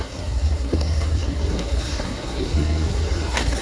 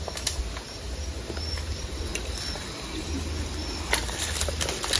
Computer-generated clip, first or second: first